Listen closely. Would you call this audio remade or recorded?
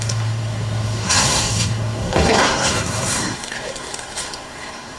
remade